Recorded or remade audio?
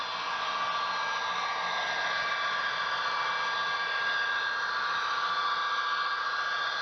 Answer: recorded